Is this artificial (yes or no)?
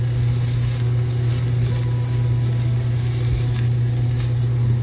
no